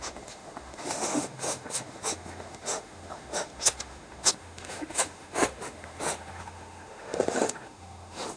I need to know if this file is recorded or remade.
remade